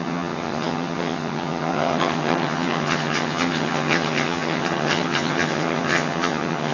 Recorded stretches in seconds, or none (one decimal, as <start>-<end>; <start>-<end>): none